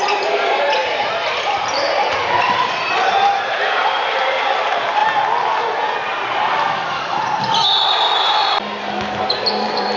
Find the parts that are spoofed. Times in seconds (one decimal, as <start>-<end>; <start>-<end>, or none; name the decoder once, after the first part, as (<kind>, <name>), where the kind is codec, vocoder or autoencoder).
0.0-5.0 (vocoder, BigVGAN v2); 9.2-10.0